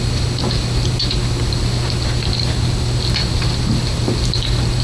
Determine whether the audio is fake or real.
real